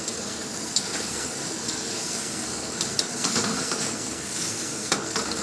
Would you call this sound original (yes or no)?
no